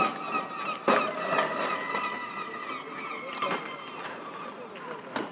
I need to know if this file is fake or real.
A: real